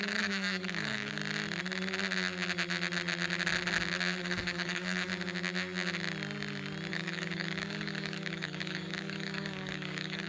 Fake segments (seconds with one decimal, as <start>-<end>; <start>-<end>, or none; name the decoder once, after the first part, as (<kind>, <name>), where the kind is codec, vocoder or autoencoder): 0.0-1.2 (codec, DAC); 4.2-5.1; 6.9-10.3